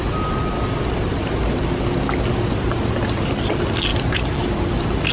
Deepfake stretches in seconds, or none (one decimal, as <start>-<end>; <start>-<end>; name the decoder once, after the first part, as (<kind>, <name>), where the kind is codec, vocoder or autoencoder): 3.9-4.5 (vocoder, BigVGAN v2)